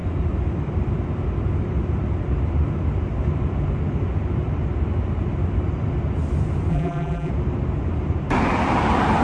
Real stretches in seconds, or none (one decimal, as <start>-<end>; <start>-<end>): 0.0-6.7; 7.3-9.2